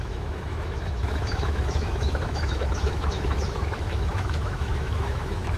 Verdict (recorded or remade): remade